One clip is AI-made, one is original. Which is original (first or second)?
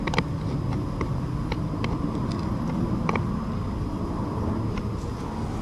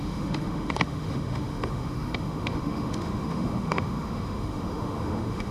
first